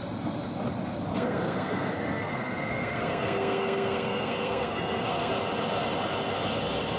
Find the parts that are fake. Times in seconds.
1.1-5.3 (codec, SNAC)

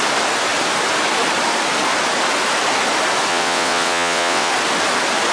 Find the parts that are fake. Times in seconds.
3.3-4.5 (vocoder, WaveNeXt)

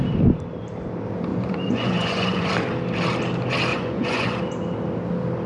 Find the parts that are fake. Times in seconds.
1.3-2.5 (vocoder, Vocos); 3.7-4.4

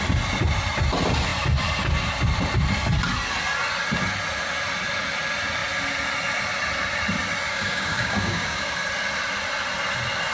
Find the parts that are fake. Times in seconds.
7.5-8.7 (codec, DAC)

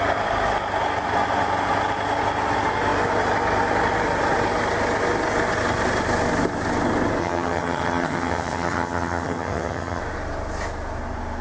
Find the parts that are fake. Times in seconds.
7.2-10.0 (vocoder, HiFi-GAN)

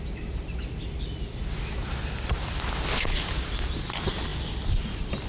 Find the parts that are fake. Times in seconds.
none

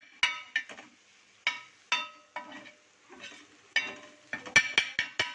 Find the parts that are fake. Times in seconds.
none

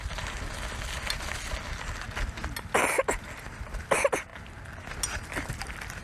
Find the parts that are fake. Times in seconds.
none